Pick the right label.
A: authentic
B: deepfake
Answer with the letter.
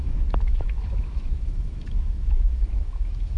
B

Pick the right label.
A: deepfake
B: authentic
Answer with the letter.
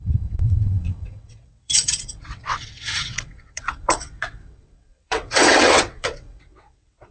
A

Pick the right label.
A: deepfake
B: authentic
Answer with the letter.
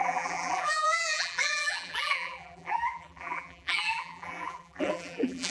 A